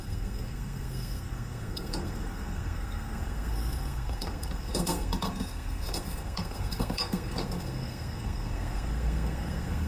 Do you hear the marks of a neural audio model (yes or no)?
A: yes